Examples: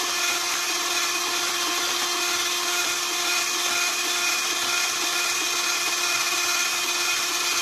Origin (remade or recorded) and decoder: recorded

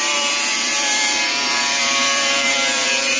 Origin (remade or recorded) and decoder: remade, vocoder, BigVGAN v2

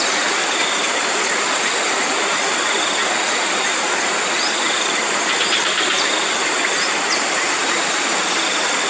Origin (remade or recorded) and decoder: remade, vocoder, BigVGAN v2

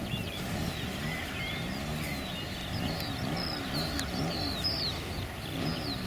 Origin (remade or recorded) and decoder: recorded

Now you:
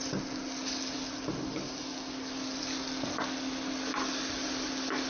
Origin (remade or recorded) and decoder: recorded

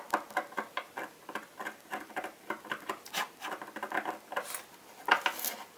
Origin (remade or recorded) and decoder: recorded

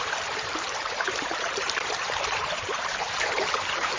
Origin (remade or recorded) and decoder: remade, vocoder, BigVGAN v2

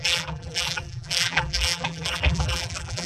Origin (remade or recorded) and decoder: remade, vocoder, BigVGAN v2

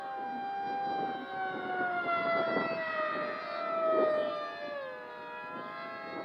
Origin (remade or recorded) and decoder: recorded